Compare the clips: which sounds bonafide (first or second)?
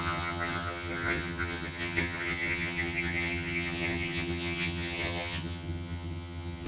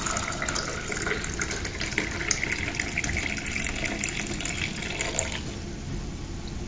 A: second